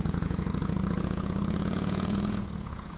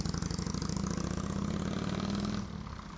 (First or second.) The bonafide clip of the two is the second